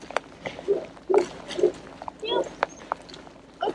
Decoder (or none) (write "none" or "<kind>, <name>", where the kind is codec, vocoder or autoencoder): none